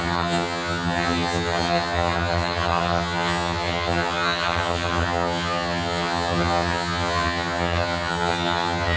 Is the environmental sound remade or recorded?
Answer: remade